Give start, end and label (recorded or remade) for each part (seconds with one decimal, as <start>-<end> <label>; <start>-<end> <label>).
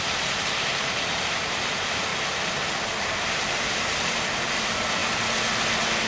0.0-2.1 remade; 2.1-3.2 recorded; 3.2-5.0 remade; 5.0-6.1 recorded